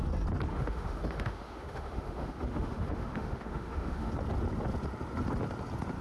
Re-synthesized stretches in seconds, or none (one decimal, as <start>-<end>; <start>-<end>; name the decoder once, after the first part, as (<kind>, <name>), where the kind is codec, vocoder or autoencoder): 0.5-4.1 (autoencoder, DAC-VAE)